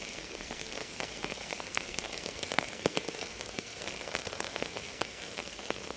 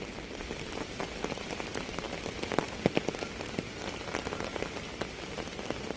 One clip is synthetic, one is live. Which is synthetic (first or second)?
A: first